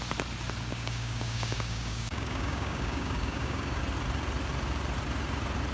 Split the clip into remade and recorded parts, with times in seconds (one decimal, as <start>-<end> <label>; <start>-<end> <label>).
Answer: 0.0-0.7 recorded; 0.7-3.8 remade; 3.8-5.7 recorded